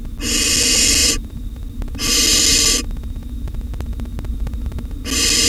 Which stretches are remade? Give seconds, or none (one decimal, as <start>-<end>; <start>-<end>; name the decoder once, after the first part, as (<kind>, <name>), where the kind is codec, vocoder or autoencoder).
none